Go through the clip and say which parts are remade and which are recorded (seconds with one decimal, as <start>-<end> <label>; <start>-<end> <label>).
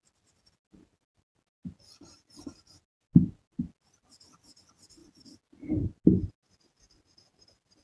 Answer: 0.0-7.8 recorded